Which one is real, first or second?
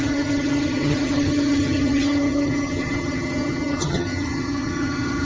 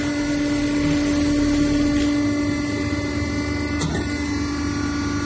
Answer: second